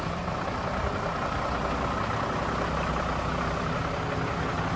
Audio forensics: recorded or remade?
recorded